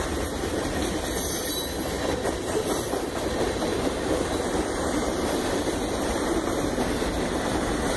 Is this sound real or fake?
fake